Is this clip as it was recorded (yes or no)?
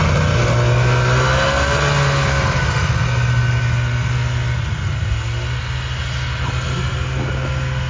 yes